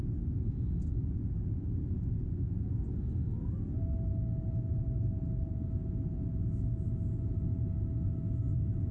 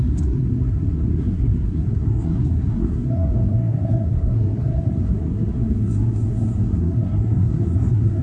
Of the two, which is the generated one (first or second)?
second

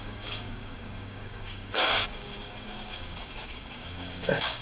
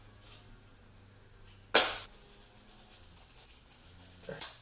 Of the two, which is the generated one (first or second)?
first